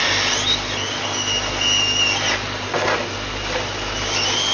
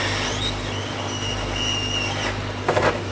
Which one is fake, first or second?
second